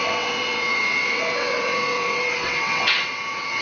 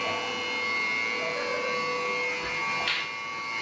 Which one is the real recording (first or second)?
second